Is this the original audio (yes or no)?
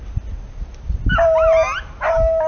yes